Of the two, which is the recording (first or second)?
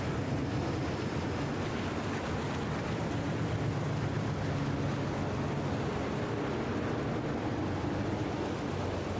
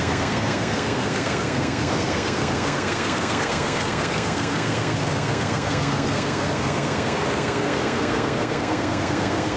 first